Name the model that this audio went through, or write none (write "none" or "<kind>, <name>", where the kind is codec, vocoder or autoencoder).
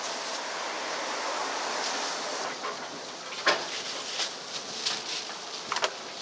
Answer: none